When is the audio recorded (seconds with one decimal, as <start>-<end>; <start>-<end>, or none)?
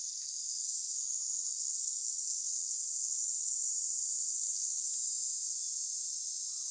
3.7-4.3; 4.9-6.7